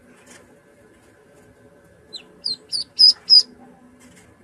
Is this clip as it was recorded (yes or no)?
yes